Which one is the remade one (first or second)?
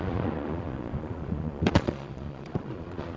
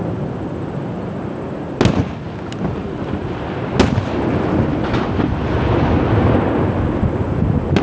first